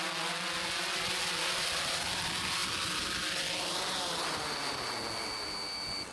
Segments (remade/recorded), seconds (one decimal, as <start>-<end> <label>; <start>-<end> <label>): 0.0-6.1 recorded